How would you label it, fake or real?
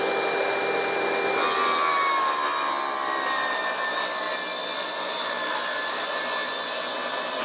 real